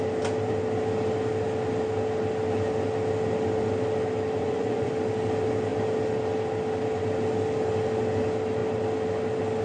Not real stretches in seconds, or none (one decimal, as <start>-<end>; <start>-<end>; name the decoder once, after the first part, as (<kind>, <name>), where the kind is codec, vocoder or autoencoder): 4.4-4.9 (vocoder, Vocos)

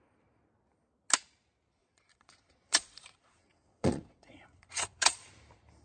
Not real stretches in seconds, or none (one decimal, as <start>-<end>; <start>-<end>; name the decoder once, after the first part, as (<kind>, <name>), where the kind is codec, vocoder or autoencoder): 1.8-5.3 (vocoder, Vocos)